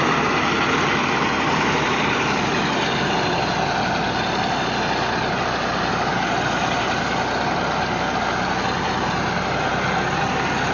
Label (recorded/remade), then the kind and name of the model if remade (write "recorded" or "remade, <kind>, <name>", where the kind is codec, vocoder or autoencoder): recorded